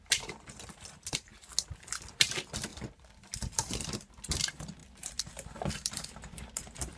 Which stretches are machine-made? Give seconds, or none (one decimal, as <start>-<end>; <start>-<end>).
0.0-1.3; 2.1-7.0